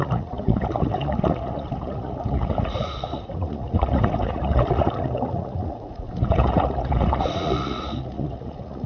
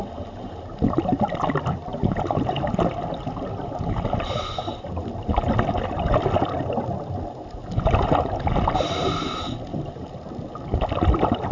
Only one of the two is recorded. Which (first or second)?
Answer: second